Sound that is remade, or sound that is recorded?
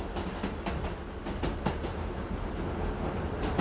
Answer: recorded